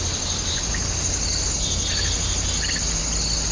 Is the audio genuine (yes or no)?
yes